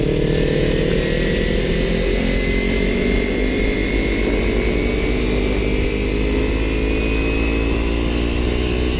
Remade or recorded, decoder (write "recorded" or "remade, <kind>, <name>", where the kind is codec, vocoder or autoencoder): recorded